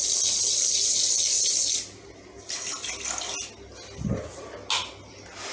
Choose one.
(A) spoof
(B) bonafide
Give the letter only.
B